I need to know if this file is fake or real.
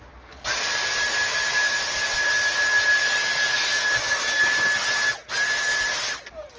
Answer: real